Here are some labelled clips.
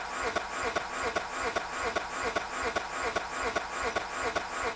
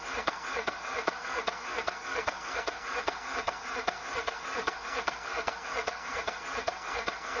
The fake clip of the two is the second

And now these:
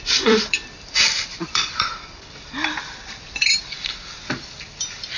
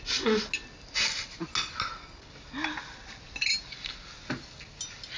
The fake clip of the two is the first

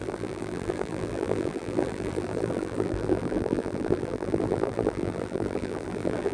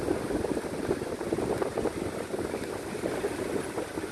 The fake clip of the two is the first